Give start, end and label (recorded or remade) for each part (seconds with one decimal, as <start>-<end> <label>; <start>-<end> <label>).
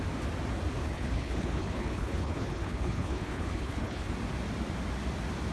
0.0-0.8 recorded; 0.8-4.1 remade; 4.1-5.5 recorded